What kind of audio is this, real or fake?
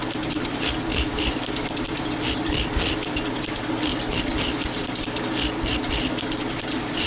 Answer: real